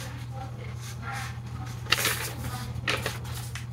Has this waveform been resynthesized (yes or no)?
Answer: no